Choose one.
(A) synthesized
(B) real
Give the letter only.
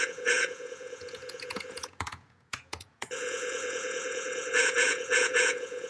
A